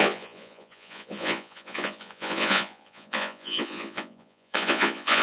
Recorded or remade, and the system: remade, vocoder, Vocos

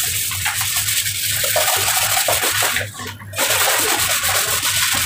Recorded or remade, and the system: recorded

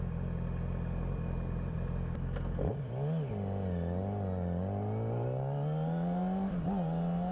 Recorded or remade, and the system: recorded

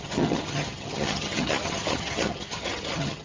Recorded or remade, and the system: remade, vocoder, HiFi-GAN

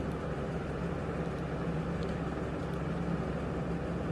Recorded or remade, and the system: recorded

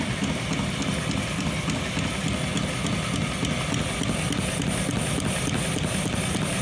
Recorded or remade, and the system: recorded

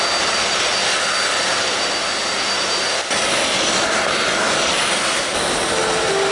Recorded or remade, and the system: recorded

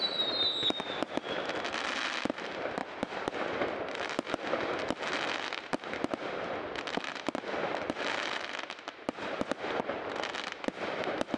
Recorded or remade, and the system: recorded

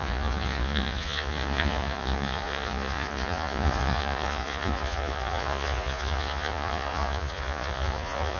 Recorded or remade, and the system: remade, vocoder, Vocos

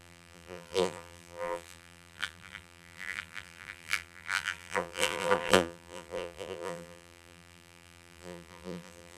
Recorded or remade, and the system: remade, vocoder, BigVGAN v2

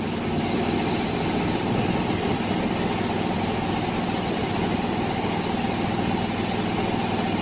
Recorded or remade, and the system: recorded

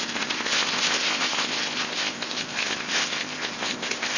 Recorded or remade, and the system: remade, codec, ZipCodec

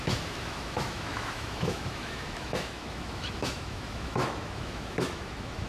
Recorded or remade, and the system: remade, autoencoder, DAC-VAE